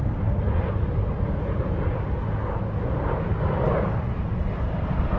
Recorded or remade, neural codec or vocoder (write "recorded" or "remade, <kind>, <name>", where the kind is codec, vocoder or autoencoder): recorded